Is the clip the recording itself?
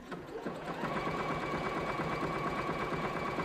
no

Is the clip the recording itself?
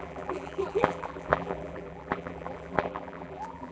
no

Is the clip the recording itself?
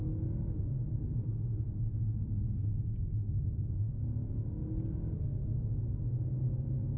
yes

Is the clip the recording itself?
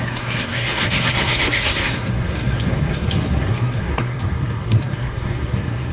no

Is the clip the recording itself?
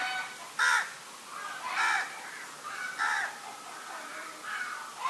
yes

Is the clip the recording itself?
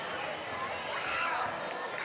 yes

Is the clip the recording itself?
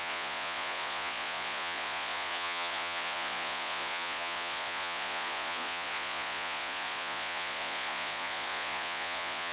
no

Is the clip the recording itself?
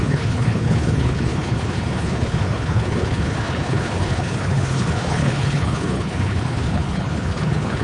no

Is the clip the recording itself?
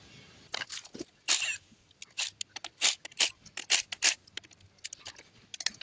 yes